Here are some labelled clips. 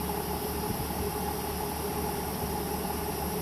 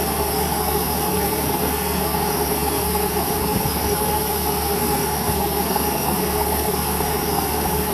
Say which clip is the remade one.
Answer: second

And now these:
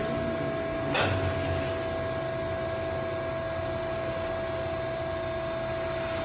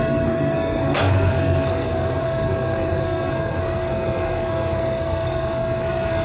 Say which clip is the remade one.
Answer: second